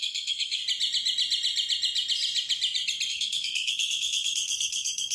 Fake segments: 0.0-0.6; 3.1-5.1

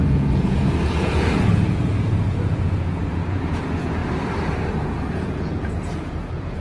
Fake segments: 0.0-4.0; 4.7-6.6

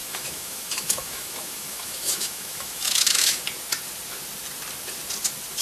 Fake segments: 0.0-3.4

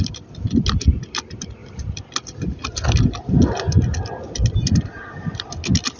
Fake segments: 0.0-6.0

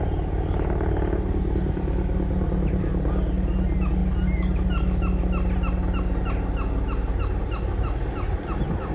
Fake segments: none

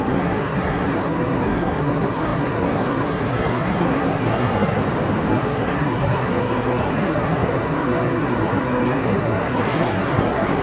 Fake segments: 0.0-4.8; 5.3-10.6

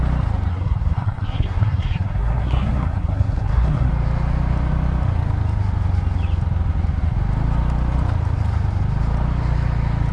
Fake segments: 0.5-3.9